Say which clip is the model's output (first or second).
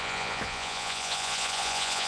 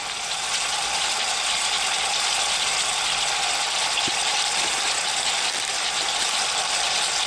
first